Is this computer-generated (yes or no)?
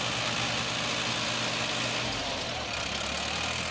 no